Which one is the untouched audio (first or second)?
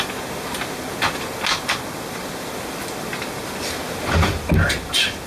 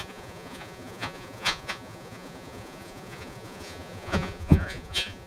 first